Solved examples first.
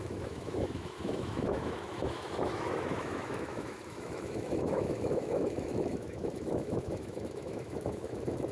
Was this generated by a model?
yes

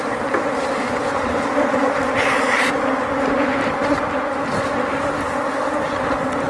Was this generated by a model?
no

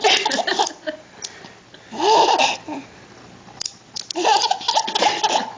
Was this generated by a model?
no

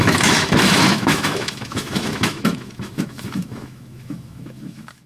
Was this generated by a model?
yes